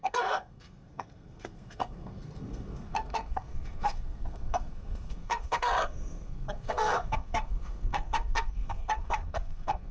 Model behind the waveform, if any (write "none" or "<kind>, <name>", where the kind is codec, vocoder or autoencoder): codec, SNAC